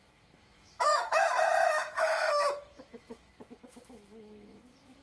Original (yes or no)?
no